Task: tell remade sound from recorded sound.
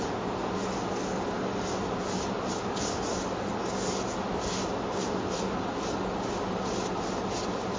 recorded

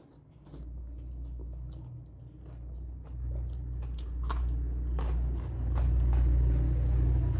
recorded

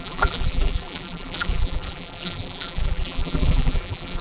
remade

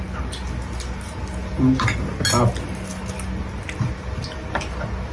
recorded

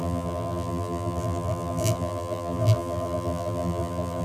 remade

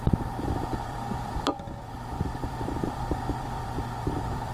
remade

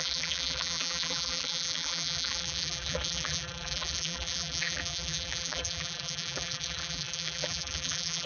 remade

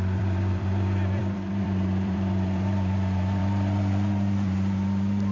remade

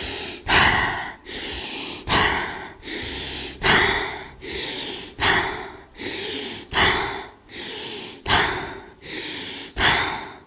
remade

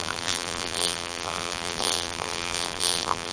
remade